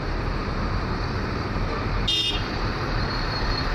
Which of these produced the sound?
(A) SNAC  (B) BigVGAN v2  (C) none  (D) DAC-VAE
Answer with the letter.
B